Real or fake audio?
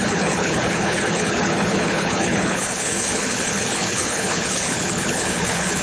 fake